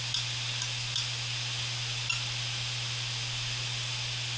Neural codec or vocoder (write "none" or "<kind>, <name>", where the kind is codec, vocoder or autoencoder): none